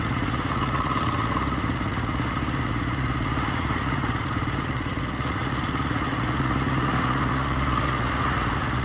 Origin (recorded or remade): remade